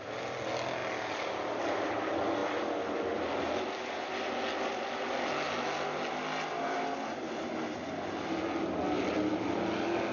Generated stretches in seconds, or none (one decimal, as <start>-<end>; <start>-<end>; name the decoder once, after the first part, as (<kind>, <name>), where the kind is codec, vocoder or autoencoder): none